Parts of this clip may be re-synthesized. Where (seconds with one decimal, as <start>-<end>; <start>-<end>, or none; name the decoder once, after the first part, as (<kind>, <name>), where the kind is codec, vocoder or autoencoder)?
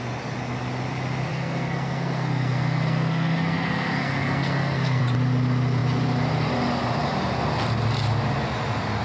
1.3-5.0 (codec, SNAC)